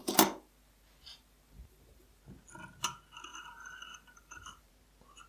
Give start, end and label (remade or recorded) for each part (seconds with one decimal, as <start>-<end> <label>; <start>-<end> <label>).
0.0-2.2 remade; 2.2-3.3 recorded; 3.3-4.7 remade; 4.7-5.3 recorded